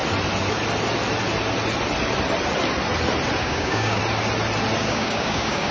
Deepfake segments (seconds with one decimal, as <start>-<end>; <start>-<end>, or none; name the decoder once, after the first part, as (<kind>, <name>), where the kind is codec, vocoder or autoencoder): 3.4-4.0 (codec, DAC); 4.8-5.7